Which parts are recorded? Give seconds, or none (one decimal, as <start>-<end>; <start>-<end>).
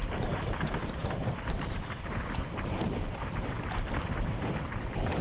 0.0-5.2